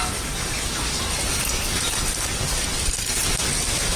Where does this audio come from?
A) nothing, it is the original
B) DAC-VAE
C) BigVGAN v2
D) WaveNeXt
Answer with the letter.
A